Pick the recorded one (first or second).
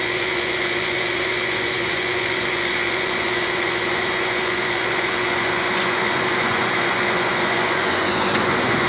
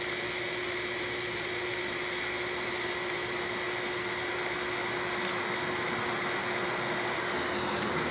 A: second